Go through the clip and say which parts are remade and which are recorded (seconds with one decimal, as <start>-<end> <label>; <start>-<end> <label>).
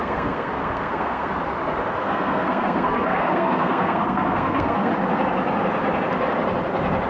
0.0-1.3 remade; 1.3-2.0 recorded; 2.0-4.9 remade; 4.9-7.1 recorded